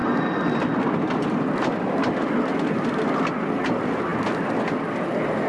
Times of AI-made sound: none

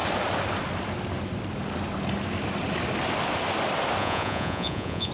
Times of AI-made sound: 4.0-5.1 (vocoder, Vocos)

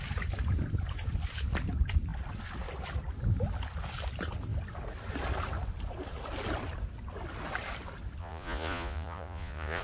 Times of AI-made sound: 8.2-9.8 (vocoder, Vocos)

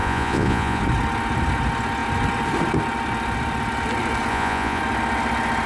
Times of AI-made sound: 0.0-0.8 (vocoder, Vocos); 4.3-4.8

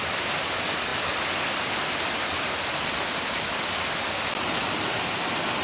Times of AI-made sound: none

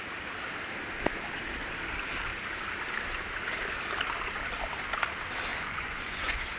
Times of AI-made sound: 5.5-6.6 (vocoder, Vocos)

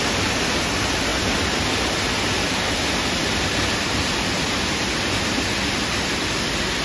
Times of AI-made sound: none

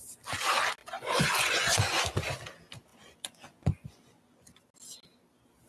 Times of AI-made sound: 0.8-2.0 (vocoder, Vocos); 2.9-4.6